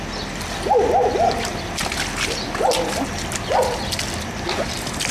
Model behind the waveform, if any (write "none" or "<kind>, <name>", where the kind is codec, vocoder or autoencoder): none